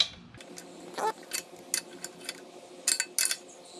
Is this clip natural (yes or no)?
yes